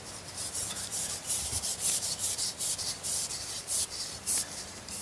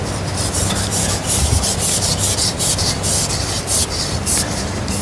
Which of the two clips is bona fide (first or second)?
second